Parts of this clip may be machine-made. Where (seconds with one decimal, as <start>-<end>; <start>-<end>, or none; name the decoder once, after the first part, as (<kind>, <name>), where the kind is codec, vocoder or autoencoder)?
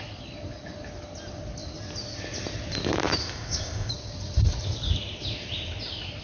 3.2-3.9 (codec, ZipCodec)